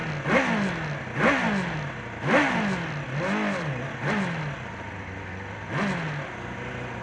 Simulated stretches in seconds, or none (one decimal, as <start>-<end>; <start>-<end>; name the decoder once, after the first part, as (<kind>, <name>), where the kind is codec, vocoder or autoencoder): none